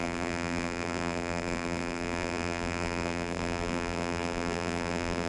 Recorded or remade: remade